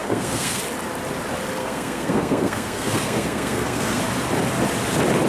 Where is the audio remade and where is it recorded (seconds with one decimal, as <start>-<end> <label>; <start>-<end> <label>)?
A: 0.0-0.6 remade; 0.6-1.6 recorded; 1.6-4.0 remade; 4.0-5.3 recorded